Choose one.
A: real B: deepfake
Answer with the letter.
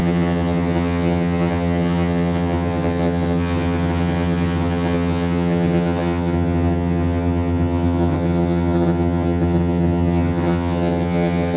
B